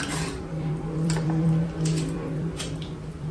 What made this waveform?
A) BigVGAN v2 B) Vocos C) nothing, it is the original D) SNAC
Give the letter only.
A